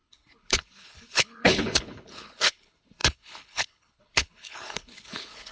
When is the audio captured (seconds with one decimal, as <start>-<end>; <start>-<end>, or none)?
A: none